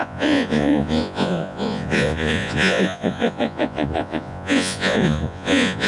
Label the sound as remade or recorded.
remade